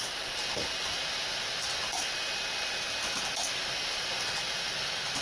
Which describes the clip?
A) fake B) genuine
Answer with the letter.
B